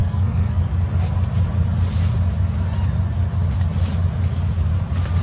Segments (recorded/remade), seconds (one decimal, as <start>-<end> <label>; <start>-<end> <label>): 0.0-0.6 remade; 0.6-5.2 recorded